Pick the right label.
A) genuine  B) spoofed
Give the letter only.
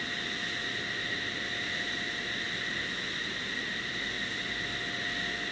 A